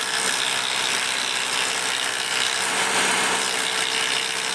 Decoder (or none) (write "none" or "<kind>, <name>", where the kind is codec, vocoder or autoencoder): none